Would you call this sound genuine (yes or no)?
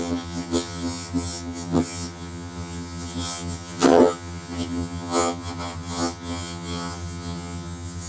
no